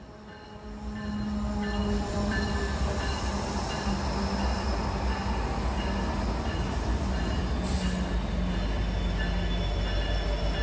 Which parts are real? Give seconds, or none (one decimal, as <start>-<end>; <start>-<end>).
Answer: 0.0-1.8; 3.9-10.6